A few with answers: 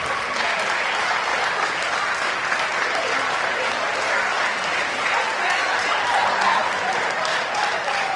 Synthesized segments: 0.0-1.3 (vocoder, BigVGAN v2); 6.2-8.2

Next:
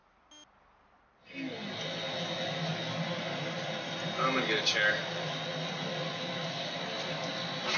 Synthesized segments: none